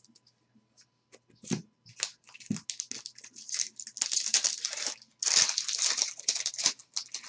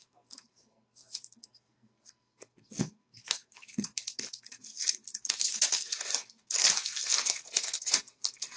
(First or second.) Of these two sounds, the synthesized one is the second